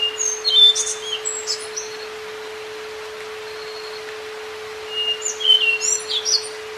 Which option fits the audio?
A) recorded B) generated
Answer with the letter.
A